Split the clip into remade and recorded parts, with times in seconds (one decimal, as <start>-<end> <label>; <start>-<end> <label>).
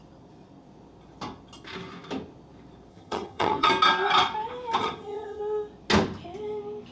0.0-2.9 recorded; 2.9-3.7 remade; 3.7-4.8 recorded; 4.8-5.4 remade; 5.4-6.9 recorded